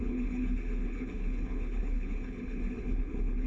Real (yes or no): no